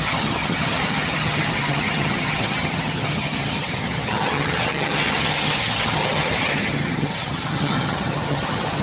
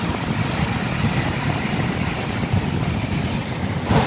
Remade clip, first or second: first